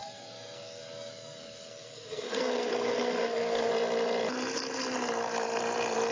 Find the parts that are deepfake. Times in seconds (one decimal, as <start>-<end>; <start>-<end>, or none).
0.0-3.7